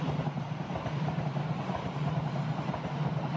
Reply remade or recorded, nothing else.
remade